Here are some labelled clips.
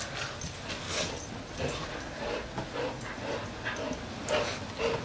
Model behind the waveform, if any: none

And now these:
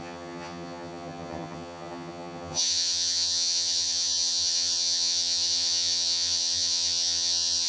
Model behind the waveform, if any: vocoder, HiFi-GAN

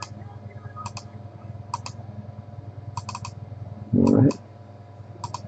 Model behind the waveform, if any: none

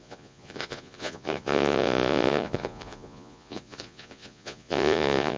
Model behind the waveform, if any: vocoder, Vocos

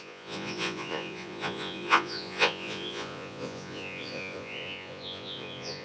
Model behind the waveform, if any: vocoder, Vocos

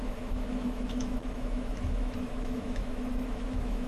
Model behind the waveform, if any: autoencoder, DAC-VAE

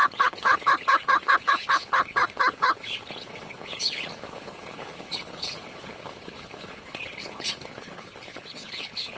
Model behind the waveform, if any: codec, HILCodec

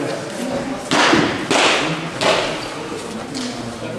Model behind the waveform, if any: none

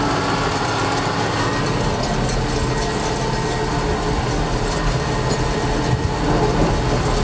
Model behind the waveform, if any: none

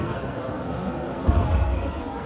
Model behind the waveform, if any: codec, SNAC